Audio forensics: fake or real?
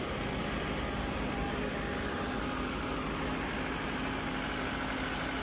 real